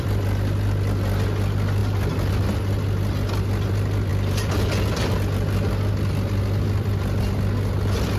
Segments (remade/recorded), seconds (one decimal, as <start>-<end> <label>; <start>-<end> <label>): 0.0-8.2 recorded